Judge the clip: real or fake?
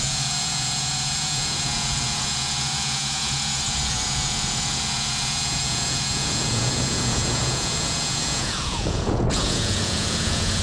fake